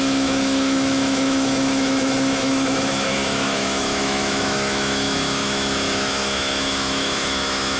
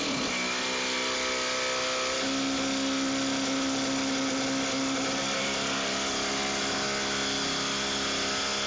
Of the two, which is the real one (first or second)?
second